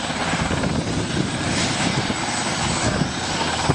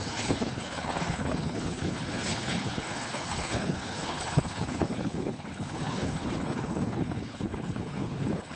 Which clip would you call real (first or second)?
first